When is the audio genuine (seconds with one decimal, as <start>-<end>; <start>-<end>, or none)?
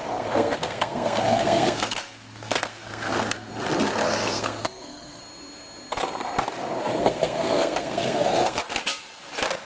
3.5-4.0; 5.2-7.0; 8.6-9.6